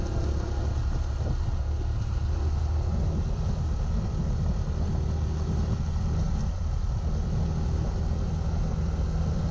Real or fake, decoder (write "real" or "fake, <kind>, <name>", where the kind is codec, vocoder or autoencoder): real